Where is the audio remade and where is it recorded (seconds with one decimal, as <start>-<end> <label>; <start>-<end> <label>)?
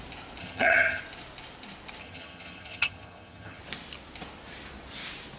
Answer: 0.0-0.4 recorded; 0.4-1.0 remade; 1.0-2.0 recorded; 2.0-3.6 remade; 3.6-5.4 recorded